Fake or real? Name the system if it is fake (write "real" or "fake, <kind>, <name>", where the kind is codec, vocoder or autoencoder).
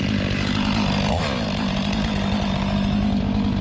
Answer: real